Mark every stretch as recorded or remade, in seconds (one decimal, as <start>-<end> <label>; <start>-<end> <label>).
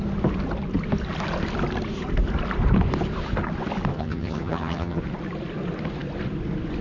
0.0-3.9 recorded; 3.9-5.0 remade; 5.0-6.8 recorded